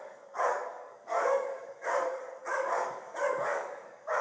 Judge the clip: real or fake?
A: fake